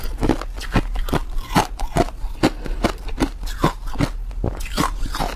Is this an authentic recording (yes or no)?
yes